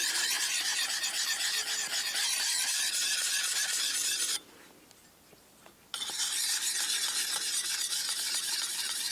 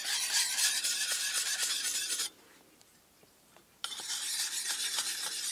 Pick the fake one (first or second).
second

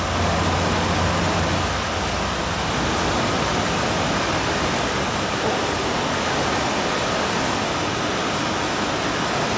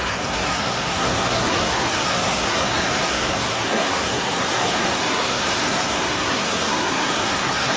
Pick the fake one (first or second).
second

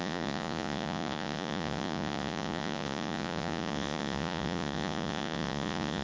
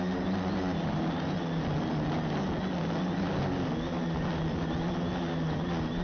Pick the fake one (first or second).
first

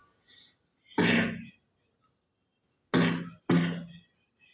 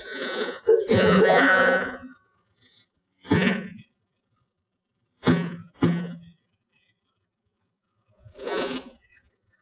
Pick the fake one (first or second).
second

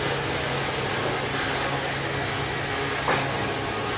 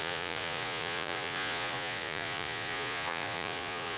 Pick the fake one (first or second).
second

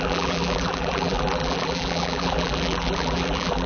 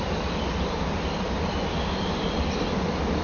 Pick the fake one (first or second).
first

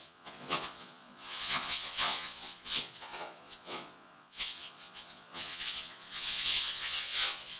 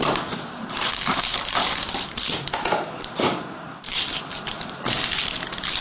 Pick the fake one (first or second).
first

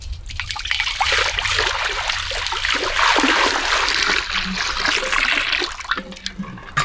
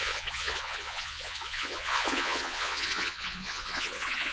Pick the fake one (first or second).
second